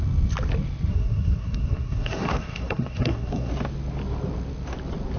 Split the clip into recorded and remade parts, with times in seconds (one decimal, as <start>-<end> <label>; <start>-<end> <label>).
0.0-0.9 recorded; 0.9-3.5 remade; 3.5-5.2 recorded